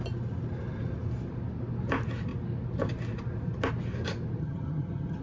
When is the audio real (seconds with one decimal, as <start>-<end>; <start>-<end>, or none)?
0.0-4.4